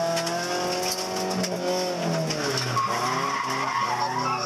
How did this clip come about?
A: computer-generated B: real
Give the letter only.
B